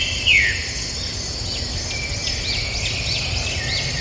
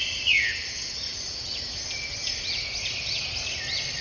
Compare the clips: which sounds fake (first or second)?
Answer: second